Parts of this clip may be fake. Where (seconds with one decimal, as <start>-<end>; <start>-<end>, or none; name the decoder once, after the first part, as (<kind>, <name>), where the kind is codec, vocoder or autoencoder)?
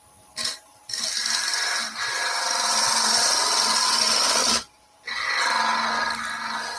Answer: 1.5-3.7 (vocoder, BigVGAN v2); 4.4-5.0